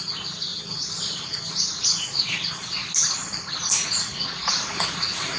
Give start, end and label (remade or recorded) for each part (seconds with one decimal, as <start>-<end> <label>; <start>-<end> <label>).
0.0-5.4 recorded